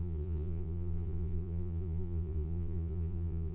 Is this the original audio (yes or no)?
no